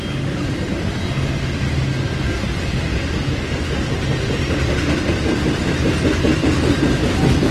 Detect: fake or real real